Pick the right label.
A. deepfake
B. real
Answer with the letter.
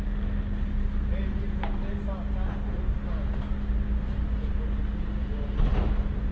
B